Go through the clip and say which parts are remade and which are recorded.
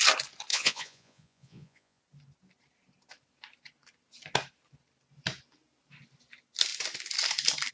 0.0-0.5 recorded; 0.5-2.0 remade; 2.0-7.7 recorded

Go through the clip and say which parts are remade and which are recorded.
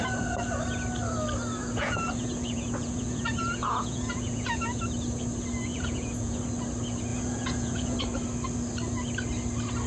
0.0-1.6 recorded; 1.6-4.8 remade; 4.8-5.7 recorded; 5.7-6.4 remade; 6.4-7.1 recorded; 7.1-8.0 remade; 8.0-9.9 recorded